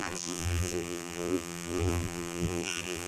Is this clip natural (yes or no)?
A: no